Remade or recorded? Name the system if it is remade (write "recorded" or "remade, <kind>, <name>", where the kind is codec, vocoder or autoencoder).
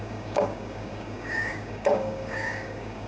remade, codec, DAC